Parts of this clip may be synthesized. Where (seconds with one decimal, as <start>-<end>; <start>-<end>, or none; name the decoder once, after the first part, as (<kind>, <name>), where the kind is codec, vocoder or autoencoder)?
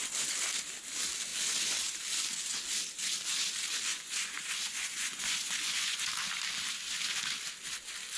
3.9-6.0 (vocoder, Vocos)